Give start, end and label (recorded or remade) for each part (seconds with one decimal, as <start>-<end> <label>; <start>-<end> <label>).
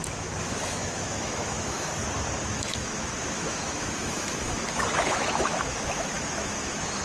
0.0-1.9 remade; 1.9-2.5 recorded; 2.5-7.0 remade